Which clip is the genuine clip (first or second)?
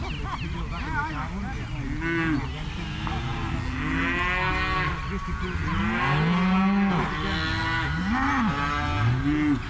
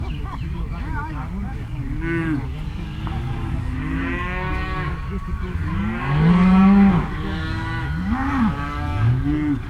first